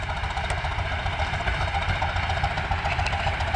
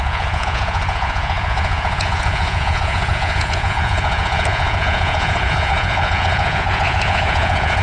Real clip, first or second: first